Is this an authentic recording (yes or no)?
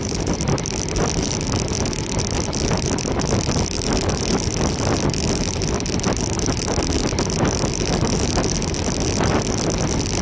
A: yes